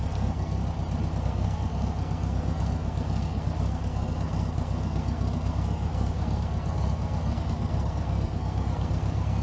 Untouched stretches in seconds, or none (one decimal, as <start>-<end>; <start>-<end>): 0.6-1.2